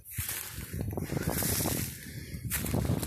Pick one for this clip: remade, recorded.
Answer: recorded